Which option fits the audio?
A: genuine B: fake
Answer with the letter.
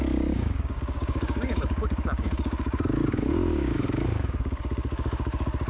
B